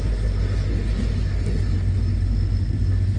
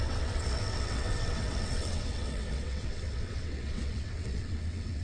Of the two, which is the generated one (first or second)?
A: second